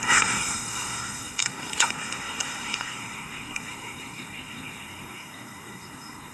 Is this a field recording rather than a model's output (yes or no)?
no